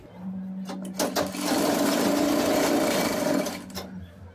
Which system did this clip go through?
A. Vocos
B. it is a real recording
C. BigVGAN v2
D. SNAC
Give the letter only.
B